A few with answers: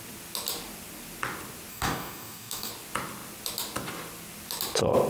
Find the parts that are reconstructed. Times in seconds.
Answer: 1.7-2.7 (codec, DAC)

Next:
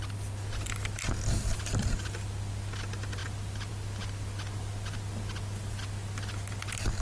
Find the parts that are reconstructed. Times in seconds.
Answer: none

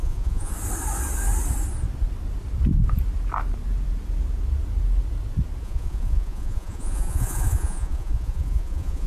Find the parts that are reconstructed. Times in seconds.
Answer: 0.0-0.5 (vocoder, Vocos); 5.6-9.1

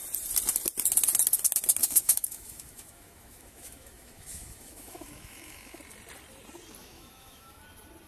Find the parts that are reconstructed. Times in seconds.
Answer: 1.8-5.8 (autoencoder, DAC-VAE); 6.8-7.6

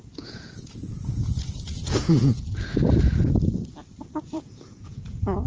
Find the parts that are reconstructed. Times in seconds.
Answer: 0.0-2.9 (vocoder, Vocos); 4.0-5.5